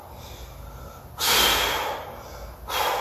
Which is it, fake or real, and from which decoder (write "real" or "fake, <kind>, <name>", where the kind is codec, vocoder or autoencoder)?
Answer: real